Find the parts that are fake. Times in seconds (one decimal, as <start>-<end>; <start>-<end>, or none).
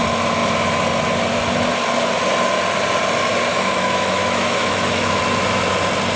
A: 3.5-5.2